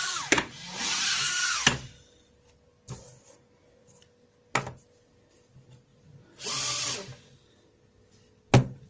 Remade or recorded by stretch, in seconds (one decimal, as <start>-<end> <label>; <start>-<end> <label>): 0.0-8.9 recorded